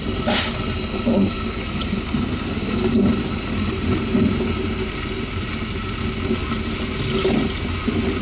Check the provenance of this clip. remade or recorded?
recorded